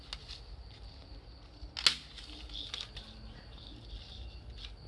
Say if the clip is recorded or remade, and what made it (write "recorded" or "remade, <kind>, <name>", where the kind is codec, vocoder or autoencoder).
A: recorded